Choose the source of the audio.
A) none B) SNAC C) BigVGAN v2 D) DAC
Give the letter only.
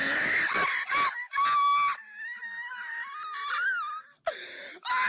A